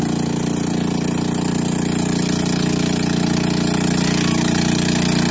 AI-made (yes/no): no